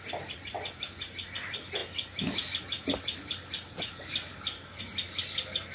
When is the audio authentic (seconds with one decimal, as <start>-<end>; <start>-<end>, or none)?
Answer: 0.0-5.7